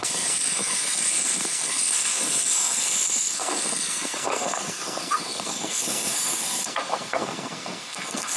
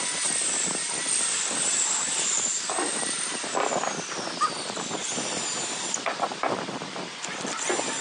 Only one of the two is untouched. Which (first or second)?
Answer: second